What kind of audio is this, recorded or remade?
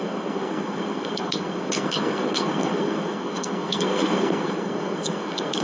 remade